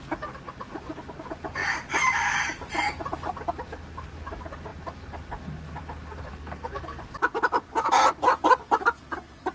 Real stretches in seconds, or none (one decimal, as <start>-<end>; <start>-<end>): 0.0-6.3; 7.0-9.5